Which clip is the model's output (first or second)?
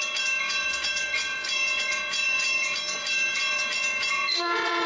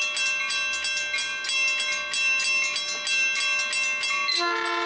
first